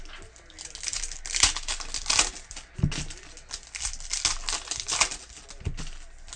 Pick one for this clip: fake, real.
real